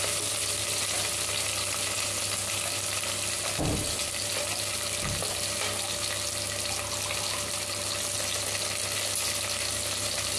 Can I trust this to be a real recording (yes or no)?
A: yes